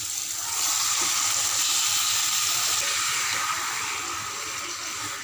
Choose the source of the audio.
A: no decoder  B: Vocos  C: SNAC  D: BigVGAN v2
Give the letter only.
A